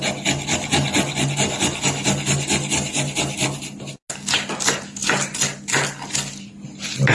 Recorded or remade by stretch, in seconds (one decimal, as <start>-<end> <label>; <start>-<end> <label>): 0.0-7.1 recorded

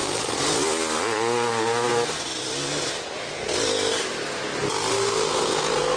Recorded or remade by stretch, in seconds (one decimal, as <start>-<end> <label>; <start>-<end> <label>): 0.0-4.9 recorded; 4.9-6.0 remade

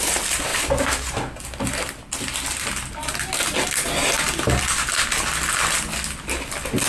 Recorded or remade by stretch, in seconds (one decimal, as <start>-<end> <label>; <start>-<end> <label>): 0.0-6.9 recorded

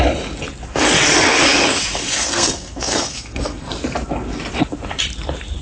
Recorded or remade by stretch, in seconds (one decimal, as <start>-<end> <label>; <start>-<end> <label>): 0.0-2.0 recorded; 2.0-3.7 remade; 3.7-5.6 recorded